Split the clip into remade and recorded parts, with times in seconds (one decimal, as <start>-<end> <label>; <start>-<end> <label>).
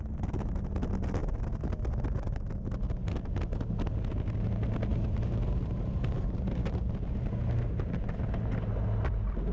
0.0-4.9 recorded; 4.9-8.2 remade; 8.2-9.5 recorded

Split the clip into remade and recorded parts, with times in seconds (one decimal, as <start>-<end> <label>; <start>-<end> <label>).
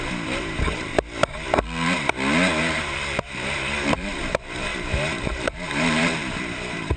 0.0-0.9 remade; 0.9-2.6 recorded; 2.6-7.0 remade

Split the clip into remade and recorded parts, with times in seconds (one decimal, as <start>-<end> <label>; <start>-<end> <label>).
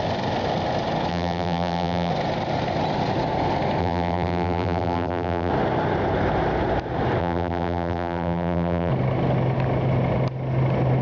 0.0-1.1 recorded; 1.1-2.1 remade; 2.1-3.8 recorded; 3.8-5.5 remade; 5.5-7.2 recorded; 7.2-8.9 remade; 8.9-11.0 recorded